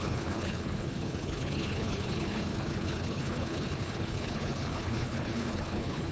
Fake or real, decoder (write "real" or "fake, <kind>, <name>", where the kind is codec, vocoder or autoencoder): fake, codec, HILCodec